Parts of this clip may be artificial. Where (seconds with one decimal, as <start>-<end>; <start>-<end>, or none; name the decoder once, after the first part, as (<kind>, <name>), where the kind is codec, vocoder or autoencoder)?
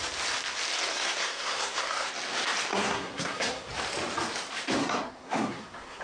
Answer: 0.9-2.1 (codec, SNAC); 2.7-3.7; 4.8-6.0